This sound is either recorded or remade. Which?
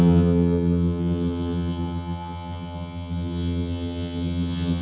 remade